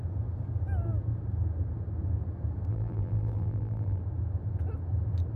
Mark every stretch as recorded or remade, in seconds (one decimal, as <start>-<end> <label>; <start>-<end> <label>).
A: 0.0-2.7 recorded; 2.7-4.0 remade; 4.0-5.4 recorded